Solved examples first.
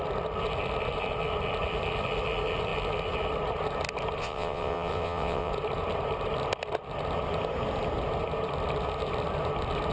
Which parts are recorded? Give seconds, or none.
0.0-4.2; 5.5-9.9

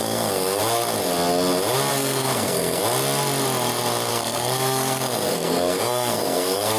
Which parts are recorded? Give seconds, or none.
0.6-1.9; 2.8-4.1